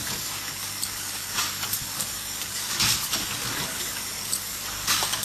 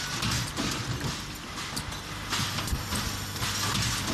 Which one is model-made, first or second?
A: first